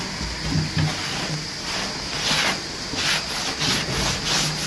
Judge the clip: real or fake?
real